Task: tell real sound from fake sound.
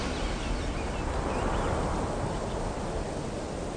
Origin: real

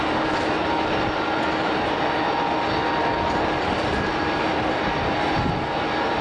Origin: real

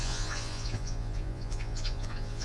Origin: fake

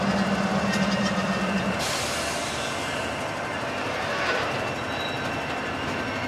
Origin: real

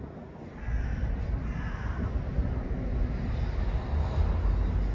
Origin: real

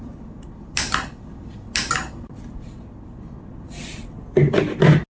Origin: real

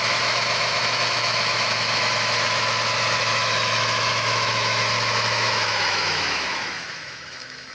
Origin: fake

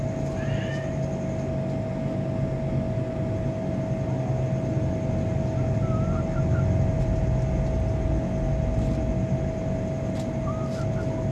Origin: real